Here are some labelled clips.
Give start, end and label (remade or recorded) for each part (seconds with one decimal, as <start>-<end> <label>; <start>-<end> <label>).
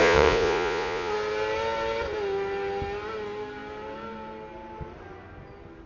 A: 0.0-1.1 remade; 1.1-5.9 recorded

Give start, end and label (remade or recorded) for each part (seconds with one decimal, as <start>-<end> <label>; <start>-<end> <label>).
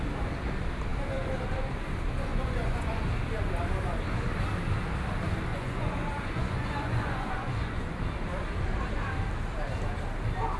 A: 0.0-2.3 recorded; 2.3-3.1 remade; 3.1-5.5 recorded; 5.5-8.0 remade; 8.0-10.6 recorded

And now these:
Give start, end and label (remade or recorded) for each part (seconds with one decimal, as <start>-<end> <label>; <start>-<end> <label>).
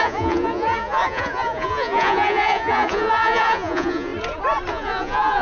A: 0.0-4.1 remade; 4.1-4.7 recorded; 4.7-5.4 remade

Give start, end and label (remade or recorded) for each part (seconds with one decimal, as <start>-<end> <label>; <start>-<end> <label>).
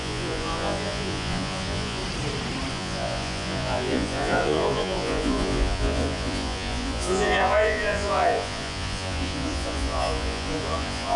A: 0.0-2.0 remade; 2.0-2.7 recorded; 2.7-11.2 remade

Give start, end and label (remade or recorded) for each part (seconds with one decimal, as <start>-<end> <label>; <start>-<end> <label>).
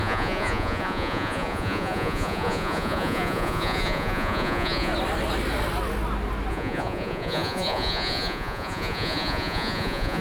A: 0.0-4.9 remade; 4.9-6.5 recorded; 6.5-10.2 remade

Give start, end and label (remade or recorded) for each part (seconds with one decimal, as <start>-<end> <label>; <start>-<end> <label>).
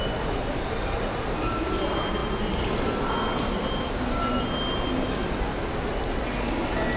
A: 0.0-7.0 recorded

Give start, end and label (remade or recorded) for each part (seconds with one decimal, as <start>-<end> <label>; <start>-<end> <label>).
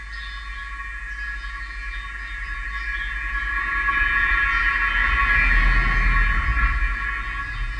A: 0.0-7.8 recorded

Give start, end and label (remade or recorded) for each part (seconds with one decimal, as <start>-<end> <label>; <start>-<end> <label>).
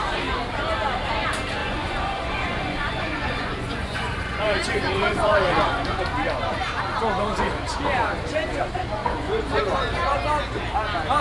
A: 0.0-1.6 recorded; 1.6-6.0 remade; 6.0-9.0 recorded; 9.0-9.6 remade; 9.6-11.2 recorded